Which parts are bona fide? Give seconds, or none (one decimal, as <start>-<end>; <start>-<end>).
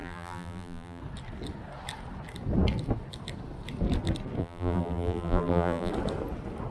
1.0-4.4; 5.9-6.7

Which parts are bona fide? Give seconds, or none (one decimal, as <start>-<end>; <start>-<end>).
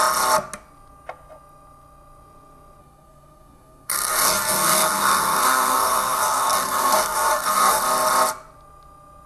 0.0-2.8; 7.8-9.3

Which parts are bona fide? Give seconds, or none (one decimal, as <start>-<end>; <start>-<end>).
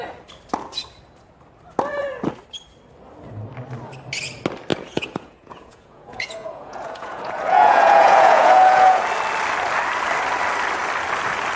0.0-4.7; 9.0-11.6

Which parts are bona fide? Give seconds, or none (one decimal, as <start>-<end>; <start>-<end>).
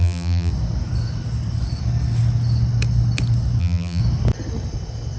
0.5-3.6; 4.0-5.2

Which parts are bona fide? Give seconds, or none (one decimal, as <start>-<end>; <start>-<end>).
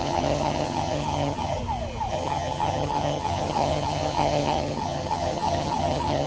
1.6-2.1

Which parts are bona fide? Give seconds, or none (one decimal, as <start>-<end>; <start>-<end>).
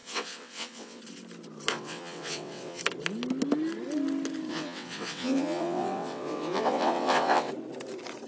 1.0-1.7; 2.8-4.5; 7.5-8.3